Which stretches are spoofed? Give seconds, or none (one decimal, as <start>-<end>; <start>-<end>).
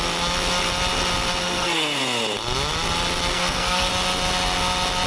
1.4-2.0; 3.3-3.9